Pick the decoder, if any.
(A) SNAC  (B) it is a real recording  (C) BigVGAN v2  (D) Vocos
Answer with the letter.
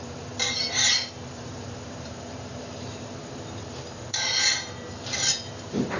C